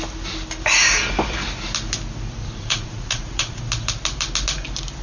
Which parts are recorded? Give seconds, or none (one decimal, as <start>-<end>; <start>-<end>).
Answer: 0.0-2.4; 3.6-5.0